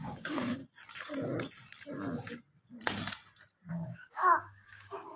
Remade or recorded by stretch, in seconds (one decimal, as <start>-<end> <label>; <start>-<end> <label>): 0.0-0.6 remade; 0.6-3.7 recorded; 3.7-5.2 remade